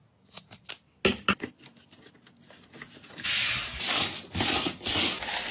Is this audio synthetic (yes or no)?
no